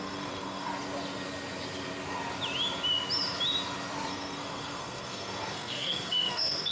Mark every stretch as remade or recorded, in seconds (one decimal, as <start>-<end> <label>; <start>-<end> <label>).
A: 0.0-0.7 remade; 0.7-4.1 recorded; 4.1-6.7 remade